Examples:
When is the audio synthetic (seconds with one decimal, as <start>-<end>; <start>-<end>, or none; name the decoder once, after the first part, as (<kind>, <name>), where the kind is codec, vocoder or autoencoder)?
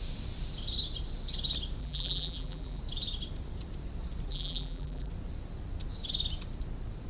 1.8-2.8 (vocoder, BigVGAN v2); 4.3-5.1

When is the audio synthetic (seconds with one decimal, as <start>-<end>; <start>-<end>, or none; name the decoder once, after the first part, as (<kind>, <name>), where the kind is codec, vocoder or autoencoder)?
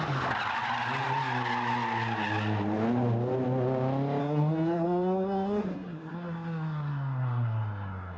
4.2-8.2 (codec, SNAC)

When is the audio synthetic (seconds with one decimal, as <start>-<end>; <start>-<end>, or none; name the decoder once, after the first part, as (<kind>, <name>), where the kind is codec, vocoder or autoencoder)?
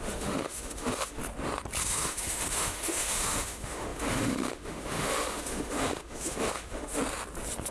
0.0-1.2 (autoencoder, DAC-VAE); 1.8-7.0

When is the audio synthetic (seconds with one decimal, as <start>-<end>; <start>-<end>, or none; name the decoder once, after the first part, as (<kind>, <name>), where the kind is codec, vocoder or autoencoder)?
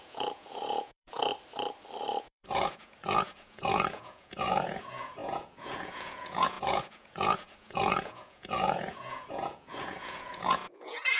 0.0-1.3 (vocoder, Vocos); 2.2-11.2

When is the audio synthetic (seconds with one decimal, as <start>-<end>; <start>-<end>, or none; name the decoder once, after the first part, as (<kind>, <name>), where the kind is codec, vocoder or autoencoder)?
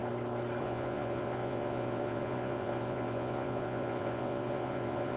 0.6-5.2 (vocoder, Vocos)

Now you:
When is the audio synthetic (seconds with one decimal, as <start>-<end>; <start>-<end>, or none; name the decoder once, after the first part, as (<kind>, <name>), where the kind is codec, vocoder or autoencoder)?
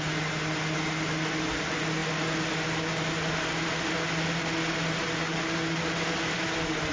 none